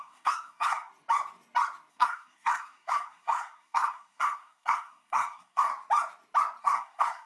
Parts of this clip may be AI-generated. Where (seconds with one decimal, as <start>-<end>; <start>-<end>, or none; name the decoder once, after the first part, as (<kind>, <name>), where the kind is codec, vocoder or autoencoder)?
0.0-0.9 (codec, SNAC); 1.9-5.7; 6.6-7.3